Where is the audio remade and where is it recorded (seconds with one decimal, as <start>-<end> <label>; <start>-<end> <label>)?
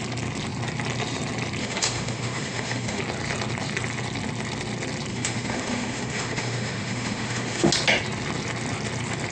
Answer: 0.0-1.6 recorded; 1.6-3.0 remade; 3.0-5.1 recorded; 5.1-7.7 remade; 7.7-9.3 recorded